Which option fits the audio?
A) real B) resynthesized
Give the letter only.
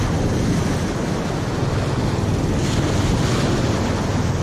A